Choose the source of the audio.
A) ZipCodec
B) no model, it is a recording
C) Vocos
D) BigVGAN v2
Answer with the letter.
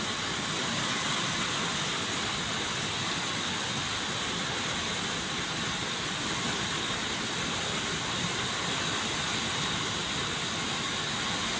B